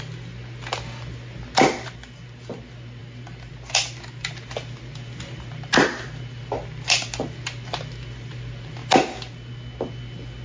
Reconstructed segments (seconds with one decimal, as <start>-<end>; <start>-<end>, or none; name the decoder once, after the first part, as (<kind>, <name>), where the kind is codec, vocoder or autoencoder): none